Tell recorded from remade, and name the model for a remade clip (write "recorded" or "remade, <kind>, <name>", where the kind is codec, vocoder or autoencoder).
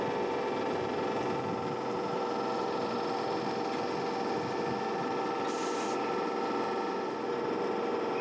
recorded